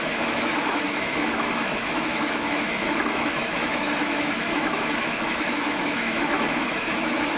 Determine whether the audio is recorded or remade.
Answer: remade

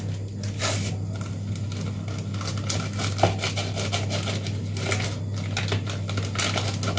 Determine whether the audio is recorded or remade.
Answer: recorded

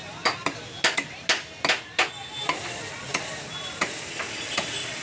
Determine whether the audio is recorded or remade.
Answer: recorded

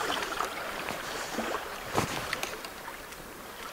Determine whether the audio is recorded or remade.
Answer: remade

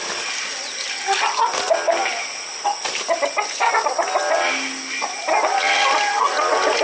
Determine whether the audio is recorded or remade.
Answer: recorded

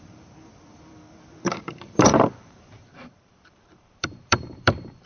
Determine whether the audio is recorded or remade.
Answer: remade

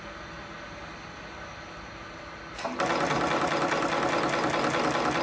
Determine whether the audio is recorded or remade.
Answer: recorded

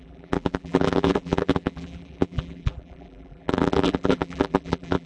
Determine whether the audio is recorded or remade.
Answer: remade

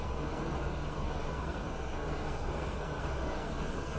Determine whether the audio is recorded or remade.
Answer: remade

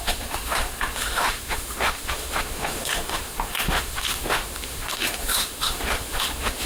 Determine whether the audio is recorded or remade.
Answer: remade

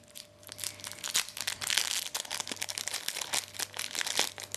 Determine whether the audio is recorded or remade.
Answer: recorded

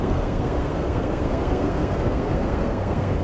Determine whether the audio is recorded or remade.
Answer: remade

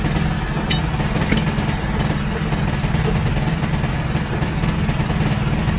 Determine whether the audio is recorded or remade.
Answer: recorded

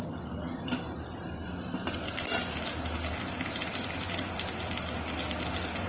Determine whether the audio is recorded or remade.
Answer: recorded